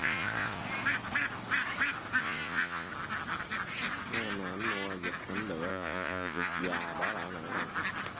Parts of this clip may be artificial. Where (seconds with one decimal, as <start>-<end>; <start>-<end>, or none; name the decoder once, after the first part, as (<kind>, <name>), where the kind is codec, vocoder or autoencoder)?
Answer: 0.0-0.6 (vocoder, Vocos); 2.2-2.9; 5.7-6.6